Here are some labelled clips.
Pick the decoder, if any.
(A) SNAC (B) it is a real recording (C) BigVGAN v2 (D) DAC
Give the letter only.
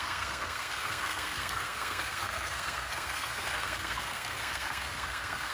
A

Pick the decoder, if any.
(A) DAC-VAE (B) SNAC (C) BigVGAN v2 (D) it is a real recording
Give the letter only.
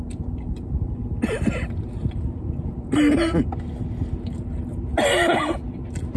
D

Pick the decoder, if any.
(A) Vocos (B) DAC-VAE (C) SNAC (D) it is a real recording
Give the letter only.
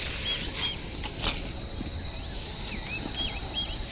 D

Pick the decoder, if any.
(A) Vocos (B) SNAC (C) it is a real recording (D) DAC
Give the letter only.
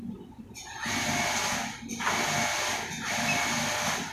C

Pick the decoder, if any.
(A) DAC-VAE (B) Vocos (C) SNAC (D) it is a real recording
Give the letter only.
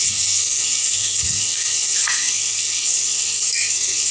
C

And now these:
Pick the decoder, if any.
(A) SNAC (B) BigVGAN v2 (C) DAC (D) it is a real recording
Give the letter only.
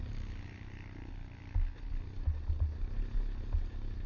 D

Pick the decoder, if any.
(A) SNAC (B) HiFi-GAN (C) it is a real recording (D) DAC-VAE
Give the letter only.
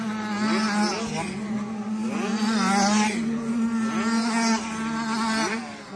C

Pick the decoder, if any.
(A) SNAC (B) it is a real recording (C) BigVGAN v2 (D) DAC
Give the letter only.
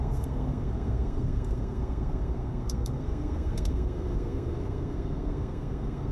A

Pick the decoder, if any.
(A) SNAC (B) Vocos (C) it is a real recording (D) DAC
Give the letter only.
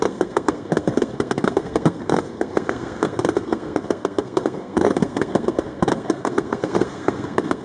A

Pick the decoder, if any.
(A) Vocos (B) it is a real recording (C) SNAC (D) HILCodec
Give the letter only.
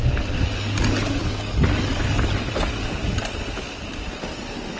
B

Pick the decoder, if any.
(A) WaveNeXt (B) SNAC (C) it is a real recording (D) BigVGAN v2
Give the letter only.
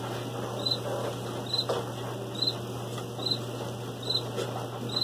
C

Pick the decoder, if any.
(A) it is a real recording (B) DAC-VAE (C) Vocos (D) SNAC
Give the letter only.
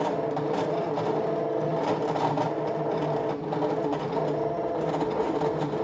A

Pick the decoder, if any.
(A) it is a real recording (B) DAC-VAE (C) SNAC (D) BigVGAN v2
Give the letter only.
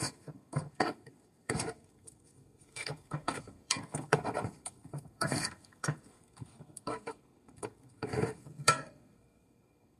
C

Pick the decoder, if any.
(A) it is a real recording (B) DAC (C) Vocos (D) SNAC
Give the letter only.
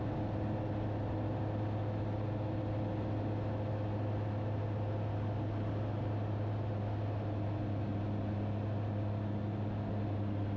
A